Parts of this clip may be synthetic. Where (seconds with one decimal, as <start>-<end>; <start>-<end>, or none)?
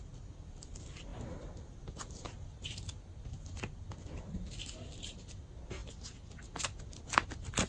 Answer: none